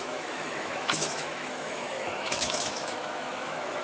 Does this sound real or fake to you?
fake